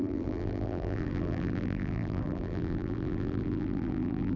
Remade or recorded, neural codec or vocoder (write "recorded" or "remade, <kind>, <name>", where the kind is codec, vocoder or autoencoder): remade, vocoder, BigVGAN v2